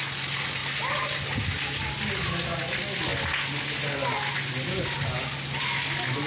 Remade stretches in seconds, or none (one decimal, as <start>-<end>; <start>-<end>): none